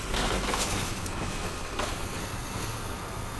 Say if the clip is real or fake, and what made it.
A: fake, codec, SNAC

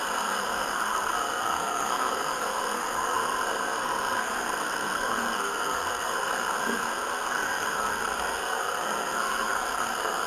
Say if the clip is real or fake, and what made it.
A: fake, codec, SNAC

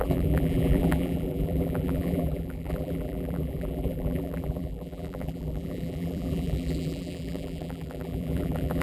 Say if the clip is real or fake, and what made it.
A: fake, vocoder, BigVGAN v2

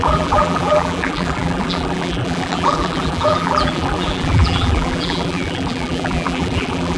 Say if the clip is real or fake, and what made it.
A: fake, vocoder, BigVGAN v2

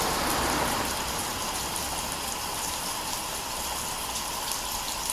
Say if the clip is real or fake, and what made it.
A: real